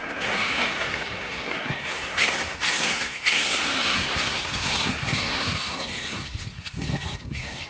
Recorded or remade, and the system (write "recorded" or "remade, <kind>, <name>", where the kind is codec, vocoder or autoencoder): remade, codec, SNAC